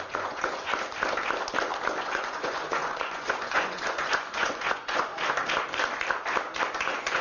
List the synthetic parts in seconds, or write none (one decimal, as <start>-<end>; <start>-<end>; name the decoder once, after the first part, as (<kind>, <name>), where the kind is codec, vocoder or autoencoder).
0.0-0.7 (vocoder, Vocos); 2.0-5.1; 6.7-7.2